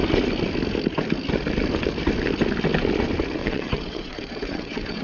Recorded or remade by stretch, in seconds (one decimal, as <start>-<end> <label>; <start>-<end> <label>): 0.0-3.4 recorded; 3.4-5.0 remade